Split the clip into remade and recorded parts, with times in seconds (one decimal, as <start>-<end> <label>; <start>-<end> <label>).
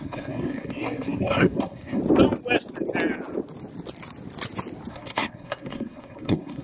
0.0-2.0 remade; 2.0-4.9 recorded; 4.9-6.6 remade